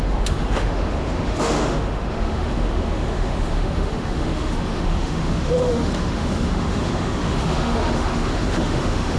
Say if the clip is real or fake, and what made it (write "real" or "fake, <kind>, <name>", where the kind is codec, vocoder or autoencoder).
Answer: fake, autoencoder, DAC-VAE